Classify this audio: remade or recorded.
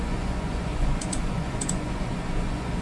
remade